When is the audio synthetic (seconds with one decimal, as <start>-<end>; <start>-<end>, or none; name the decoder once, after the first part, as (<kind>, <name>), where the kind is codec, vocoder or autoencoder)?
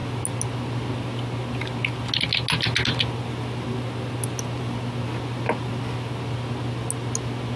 none